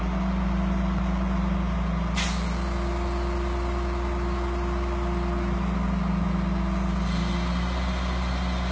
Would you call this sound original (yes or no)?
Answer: yes